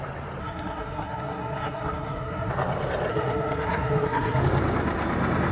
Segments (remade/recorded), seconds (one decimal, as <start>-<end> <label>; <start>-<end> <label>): 0.0-0.4 recorded; 0.4-2.5 remade; 2.5-3.1 recorded; 3.1-4.4 remade; 4.4-5.5 recorded